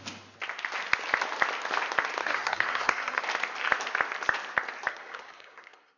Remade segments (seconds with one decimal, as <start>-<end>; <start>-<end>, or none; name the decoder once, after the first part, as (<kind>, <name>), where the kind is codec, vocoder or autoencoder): 2.2-3.2 (codec, SNAC); 4.9-6.0